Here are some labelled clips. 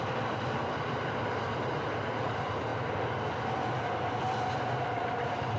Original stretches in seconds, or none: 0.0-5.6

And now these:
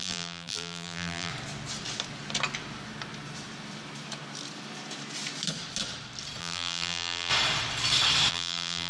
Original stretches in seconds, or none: 1.3-6.4; 7.3-8.3

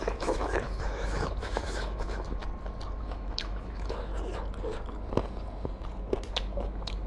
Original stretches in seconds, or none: 2.4-3.0; 4.1-6.3

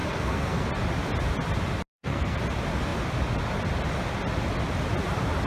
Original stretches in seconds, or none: 0.7-1.9; 2.4-5.5

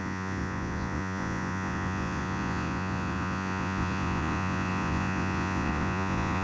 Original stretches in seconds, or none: none